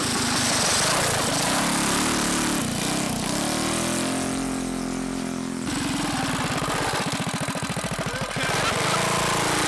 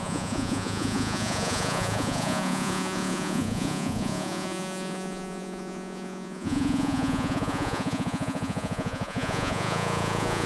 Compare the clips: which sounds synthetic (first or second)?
second